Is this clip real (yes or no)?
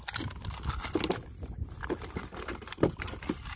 yes